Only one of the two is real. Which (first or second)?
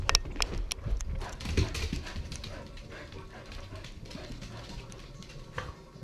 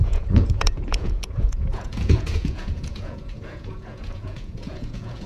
first